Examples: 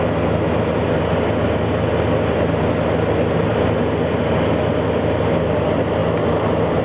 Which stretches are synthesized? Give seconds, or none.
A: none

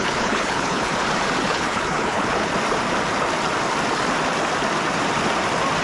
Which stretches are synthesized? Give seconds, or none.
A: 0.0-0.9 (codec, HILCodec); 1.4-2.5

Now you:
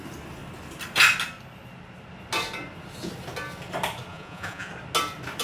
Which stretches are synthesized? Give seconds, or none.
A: 4.1-4.7 (vocoder, Vocos)

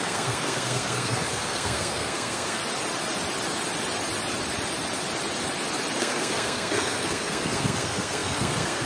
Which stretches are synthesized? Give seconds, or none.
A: 0.0-2.6 (codec, SNAC); 6.0-8.9